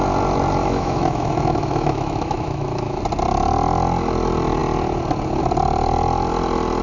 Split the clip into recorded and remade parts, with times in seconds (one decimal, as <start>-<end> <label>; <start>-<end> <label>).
0.0-0.6 recorded; 0.6-3.0 remade; 3.0-6.8 recorded